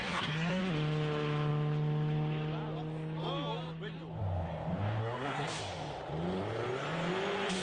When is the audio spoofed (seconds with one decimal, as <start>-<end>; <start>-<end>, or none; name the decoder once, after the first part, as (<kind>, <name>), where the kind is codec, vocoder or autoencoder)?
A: 0.0-0.6 (codec, SNAC); 5.0-5.6